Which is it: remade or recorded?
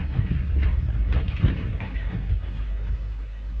remade